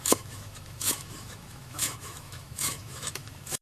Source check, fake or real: fake